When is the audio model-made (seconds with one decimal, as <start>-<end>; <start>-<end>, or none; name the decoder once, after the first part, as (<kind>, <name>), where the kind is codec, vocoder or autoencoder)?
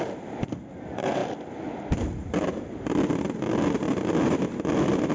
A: none